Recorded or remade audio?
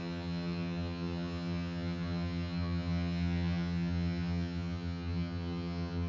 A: remade